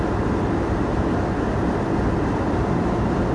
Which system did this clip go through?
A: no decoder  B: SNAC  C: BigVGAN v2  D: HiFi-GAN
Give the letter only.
A